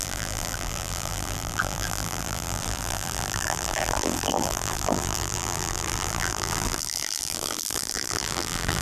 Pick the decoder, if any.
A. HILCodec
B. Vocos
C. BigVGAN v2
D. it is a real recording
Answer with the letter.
C